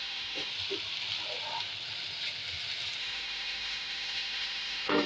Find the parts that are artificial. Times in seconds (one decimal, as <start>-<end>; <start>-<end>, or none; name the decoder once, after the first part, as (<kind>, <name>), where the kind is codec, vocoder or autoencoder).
0.0-0.5 (autoencoder, DAC-VAE); 3.0-5.1